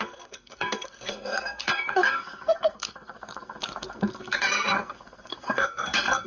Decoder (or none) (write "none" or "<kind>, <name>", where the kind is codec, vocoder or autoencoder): codec, SNAC